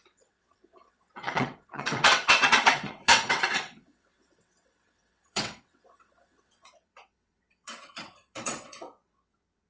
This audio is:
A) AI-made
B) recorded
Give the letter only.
A